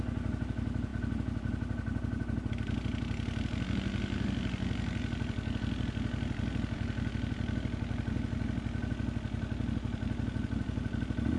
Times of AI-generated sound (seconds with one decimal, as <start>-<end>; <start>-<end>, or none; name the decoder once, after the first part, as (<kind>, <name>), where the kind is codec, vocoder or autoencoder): none